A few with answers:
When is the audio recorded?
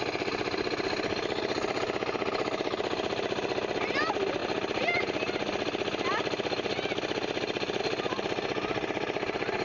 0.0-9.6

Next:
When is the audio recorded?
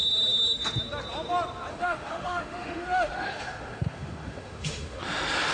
0.0-1.7; 5.0-5.5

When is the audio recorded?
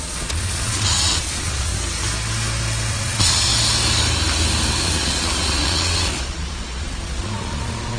1.7-2.9; 3.5-4.8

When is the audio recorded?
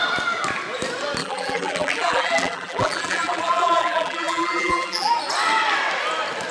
0.0-1.2; 5.1-6.5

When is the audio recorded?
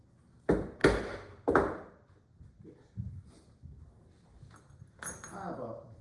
0.0-6.0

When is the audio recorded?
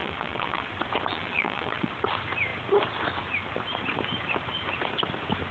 0.7-1.1; 1.9-5.5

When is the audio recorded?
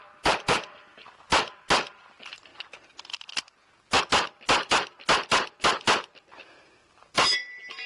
2.5-4.0